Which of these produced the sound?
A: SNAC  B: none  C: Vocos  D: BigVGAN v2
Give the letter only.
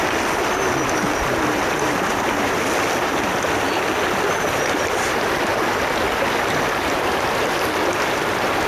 B